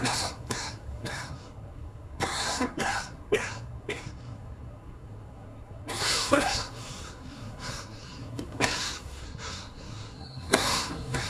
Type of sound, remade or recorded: remade